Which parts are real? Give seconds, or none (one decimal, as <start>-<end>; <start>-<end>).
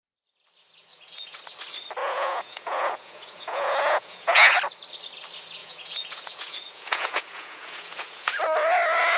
0.0-0.9; 1.4-2.0; 4.5-5.6; 8.4-9.2